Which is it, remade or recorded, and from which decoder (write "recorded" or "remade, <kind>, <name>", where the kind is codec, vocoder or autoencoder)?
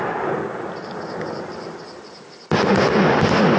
recorded